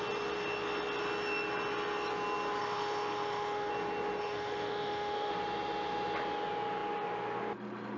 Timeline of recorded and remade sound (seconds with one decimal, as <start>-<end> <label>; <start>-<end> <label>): 0.0-2.6 recorded; 2.6-3.7 remade; 3.7-4.2 recorded; 4.2-5.3 remade; 5.3-8.0 recorded